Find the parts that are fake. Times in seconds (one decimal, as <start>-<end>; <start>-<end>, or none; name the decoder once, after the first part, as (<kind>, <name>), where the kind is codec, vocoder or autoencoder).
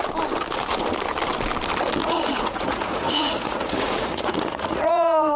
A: 2.0-5.4 (vocoder, Vocos)